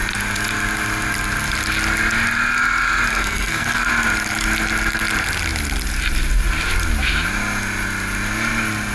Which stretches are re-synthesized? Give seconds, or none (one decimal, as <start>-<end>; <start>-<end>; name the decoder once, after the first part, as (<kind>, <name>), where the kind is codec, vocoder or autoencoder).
3.1-3.9 (codec, SNAC)